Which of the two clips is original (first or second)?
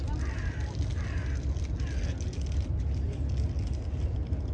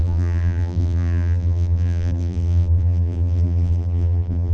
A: first